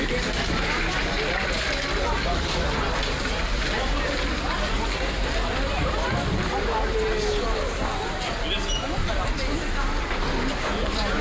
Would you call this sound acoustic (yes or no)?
yes